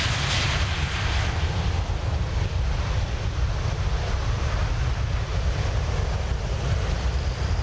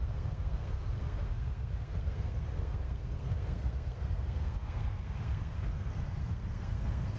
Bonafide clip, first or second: first